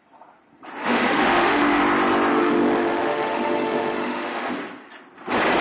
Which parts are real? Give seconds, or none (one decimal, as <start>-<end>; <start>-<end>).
0.0-0.8; 1.8-2.3; 4.5-5.6